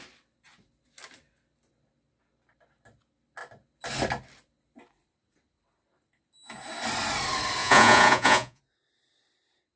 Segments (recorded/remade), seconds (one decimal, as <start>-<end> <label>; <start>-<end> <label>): 0.0-7.6 recorded; 7.6-8.6 remade; 8.6-9.8 recorded